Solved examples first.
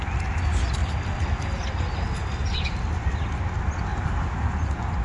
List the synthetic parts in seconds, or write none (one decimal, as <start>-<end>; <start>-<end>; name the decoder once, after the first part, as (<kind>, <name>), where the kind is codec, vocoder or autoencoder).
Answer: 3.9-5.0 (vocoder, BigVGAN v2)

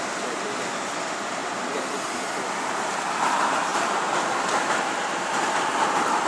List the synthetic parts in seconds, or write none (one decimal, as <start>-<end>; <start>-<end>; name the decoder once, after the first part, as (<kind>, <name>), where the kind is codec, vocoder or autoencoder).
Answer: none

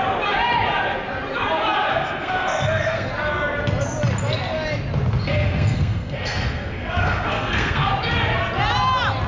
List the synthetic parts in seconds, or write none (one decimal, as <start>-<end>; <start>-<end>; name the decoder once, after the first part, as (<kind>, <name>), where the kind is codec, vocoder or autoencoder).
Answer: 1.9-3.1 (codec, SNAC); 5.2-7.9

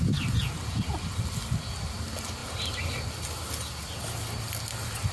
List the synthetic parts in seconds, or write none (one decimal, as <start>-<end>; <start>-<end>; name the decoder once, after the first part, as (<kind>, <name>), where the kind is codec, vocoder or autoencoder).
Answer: 0.0-2.4 (vocoder, BigVGAN v2); 4.0-5.1

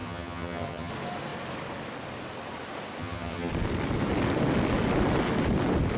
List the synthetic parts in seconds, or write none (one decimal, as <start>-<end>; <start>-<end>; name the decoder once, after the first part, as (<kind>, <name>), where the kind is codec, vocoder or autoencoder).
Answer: 0.0-0.9 (vocoder, HiFi-GAN); 3.0-3.5